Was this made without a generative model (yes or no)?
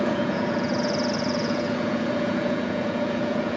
no